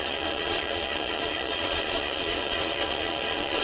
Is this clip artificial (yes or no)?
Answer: yes